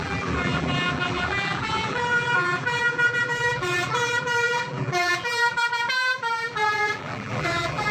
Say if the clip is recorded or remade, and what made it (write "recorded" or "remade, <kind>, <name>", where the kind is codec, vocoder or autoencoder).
remade, vocoder, BigVGAN v2